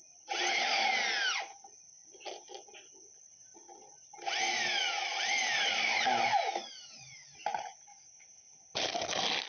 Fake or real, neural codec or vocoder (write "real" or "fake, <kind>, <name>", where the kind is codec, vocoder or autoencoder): real